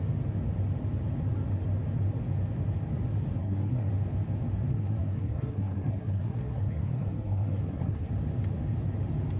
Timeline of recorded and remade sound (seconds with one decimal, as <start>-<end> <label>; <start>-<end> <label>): 0.0-3.4 recorded; 3.4-3.9 remade; 3.9-4.7 recorded; 4.7-8.1 remade; 8.1-9.4 recorded